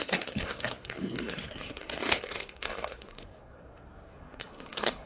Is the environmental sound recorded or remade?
remade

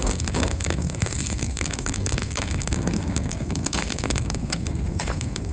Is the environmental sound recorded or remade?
remade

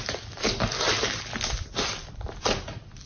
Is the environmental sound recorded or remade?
recorded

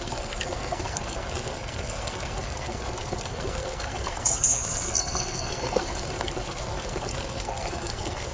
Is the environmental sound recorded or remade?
remade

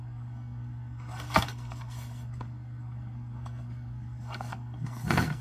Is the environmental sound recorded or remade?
remade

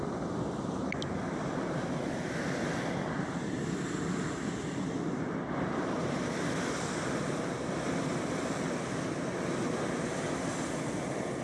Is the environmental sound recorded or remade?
recorded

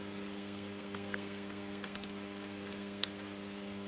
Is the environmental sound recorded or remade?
remade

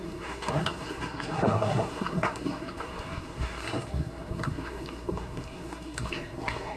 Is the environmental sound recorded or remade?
remade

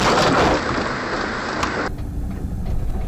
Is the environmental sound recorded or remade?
recorded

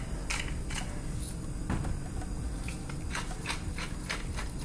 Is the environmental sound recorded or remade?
recorded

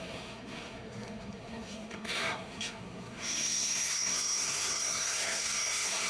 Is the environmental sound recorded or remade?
remade